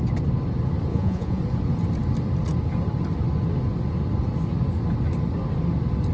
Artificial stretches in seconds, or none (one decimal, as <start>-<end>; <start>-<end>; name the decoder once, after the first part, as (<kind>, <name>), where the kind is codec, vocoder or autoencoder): 0.9-1.4 (vocoder, Vocos)